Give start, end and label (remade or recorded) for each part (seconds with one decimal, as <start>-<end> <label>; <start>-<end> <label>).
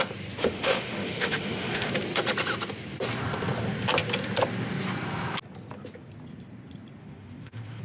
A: 0.0-0.4 recorded; 0.4-1.9 remade; 1.9-7.0 recorded; 7.0-7.8 remade